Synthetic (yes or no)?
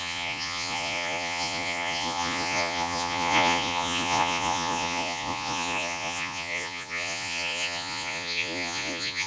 yes